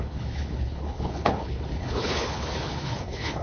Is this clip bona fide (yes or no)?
no